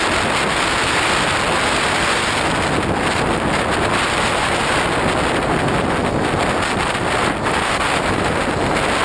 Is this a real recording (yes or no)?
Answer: yes